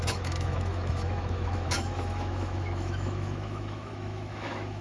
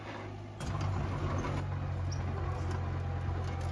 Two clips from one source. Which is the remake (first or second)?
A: first